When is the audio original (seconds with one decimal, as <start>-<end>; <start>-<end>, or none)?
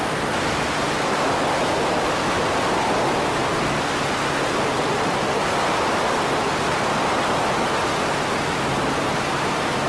0.0-9.9